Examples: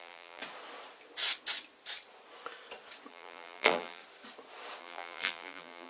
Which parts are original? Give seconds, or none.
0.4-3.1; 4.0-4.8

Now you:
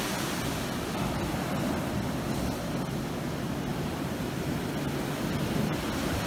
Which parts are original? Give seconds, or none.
0.0-3.7; 4.5-6.3

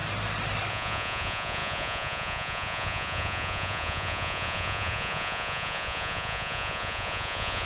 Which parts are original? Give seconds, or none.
0.0-0.7

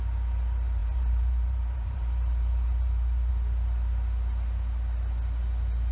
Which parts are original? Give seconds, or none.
0.0-0.8; 3.3-5.9

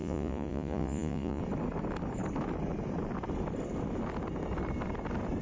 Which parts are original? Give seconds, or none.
1.4-5.4

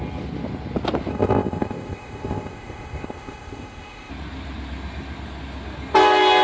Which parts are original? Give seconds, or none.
0.0-1.1; 4.1-6.4